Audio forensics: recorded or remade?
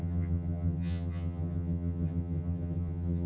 remade